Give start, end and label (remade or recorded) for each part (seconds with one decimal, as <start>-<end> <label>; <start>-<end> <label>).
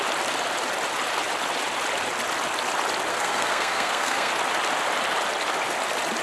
0.0-3.1 recorded; 3.1-4.3 remade; 4.3-6.2 recorded